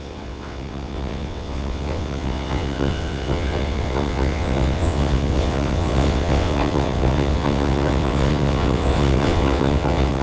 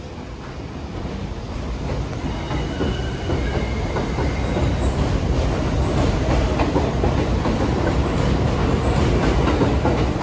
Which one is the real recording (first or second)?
second